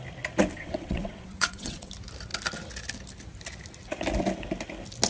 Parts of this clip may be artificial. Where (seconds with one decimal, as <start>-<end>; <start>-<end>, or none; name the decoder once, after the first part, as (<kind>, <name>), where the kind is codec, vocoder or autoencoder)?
0.5-1.9 (vocoder, WaveNeXt)